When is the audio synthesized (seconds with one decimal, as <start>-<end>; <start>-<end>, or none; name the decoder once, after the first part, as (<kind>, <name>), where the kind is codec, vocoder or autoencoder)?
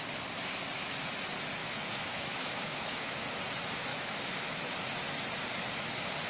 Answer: 1.6-3.2 (autoencoder, DAC-VAE); 3.9-4.7